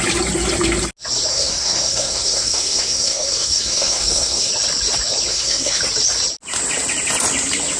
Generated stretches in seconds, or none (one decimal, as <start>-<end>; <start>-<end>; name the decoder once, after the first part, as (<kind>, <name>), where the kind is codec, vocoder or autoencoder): 1.3-4.5 (codec, SNAC); 5.3-5.8